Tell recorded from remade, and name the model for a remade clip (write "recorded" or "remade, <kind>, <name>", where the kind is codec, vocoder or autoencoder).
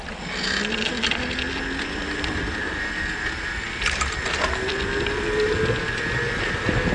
recorded